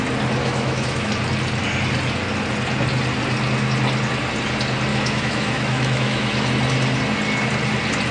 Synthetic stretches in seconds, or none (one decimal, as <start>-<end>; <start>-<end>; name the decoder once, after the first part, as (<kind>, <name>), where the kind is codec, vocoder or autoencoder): 0.4-1.1 (autoencoder, DAC-VAE); 4.9-6.5